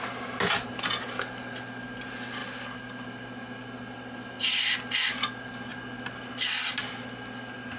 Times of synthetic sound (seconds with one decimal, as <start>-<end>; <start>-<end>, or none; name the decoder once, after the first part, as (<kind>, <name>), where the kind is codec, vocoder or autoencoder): none